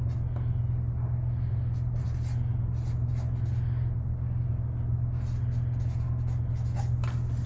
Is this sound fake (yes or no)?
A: no